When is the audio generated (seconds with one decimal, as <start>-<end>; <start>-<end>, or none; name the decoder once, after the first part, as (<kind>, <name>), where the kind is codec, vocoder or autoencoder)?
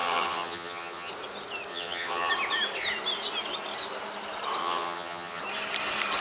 0.0-1.1 (vocoder, HiFi-GAN); 1.7-2.3; 4.6-5.4